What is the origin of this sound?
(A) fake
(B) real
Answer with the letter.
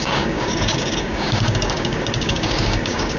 A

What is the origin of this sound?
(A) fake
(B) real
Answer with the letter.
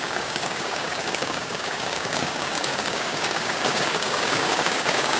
A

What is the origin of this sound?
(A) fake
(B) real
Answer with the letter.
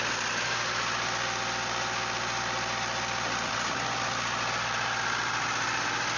B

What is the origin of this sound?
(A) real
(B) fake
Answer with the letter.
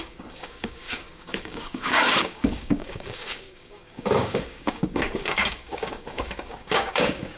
B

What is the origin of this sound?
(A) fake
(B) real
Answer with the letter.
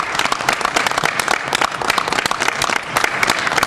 B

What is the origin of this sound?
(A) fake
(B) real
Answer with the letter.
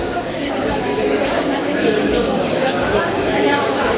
A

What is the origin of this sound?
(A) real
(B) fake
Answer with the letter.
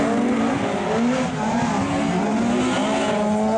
A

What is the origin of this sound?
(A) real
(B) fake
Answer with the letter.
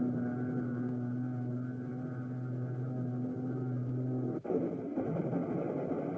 A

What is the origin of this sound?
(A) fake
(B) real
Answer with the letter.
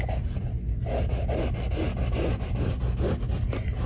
B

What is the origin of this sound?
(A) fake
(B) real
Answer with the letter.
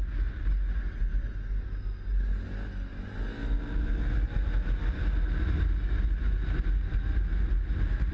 B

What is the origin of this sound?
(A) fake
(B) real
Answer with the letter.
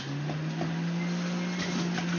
B